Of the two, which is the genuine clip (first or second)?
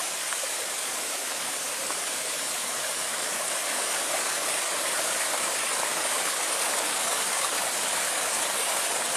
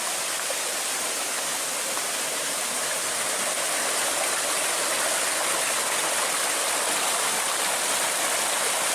second